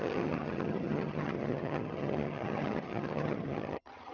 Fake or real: fake